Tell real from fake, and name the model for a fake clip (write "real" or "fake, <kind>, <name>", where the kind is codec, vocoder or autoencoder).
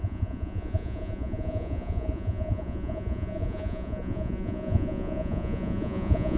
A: fake, vocoder, Vocos